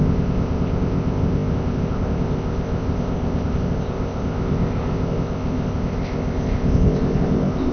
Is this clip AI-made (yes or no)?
yes